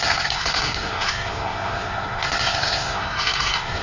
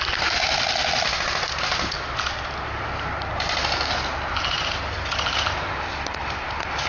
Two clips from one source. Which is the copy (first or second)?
first